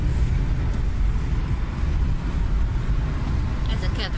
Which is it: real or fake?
real